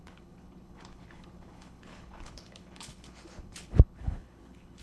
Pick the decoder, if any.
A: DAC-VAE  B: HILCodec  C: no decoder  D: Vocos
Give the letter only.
B